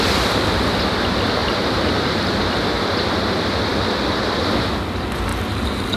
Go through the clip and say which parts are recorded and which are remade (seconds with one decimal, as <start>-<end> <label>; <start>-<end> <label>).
0.0-1.4 recorded; 1.4-2.4 remade; 2.4-6.0 recorded